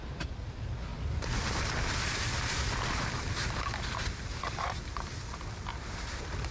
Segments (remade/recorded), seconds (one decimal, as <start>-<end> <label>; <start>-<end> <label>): 0.0-6.5 recorded